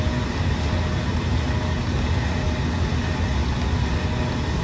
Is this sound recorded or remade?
recorded